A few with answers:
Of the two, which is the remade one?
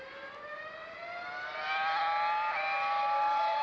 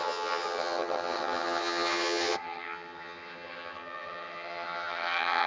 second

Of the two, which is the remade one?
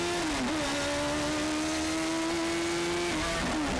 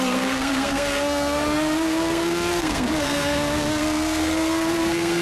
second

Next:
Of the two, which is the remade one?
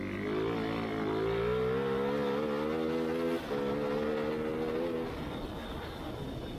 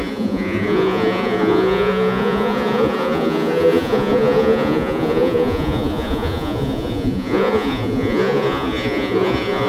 second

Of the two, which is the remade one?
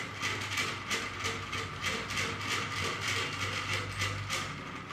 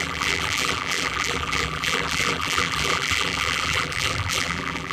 second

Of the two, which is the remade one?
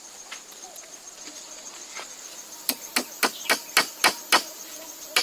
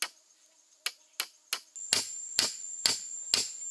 first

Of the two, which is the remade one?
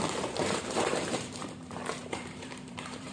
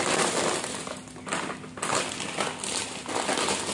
first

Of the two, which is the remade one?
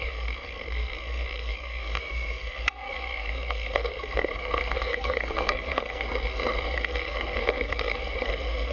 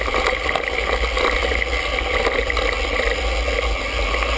first